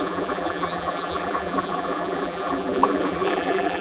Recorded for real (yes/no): no